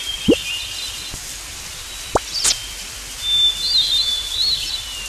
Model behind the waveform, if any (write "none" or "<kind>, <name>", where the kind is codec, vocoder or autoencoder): none